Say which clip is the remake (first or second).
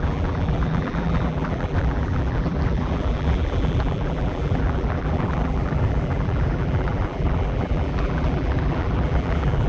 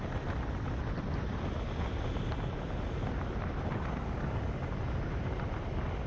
first